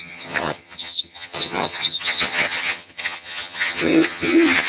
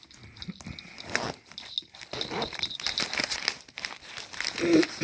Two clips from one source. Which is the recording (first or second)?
second